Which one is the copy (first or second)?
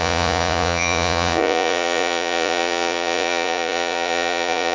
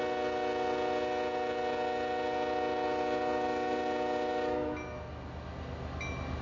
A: first